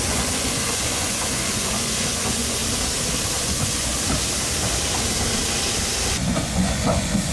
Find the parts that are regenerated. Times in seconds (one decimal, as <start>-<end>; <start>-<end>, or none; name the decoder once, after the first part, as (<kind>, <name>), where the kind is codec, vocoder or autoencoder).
0.0-2.6 (vocoder, Vocos); 3.4-3.9; 6.1-7.3